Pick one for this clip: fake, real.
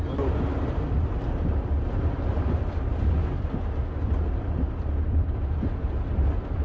real